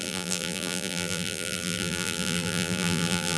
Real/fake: fake